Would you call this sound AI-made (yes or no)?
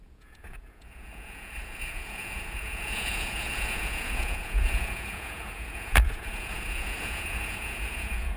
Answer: yes